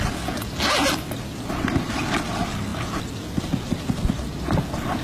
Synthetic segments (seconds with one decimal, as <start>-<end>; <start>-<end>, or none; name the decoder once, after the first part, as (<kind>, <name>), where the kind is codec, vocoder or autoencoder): none